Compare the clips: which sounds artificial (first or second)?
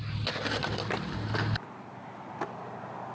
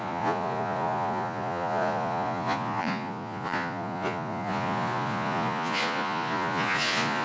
second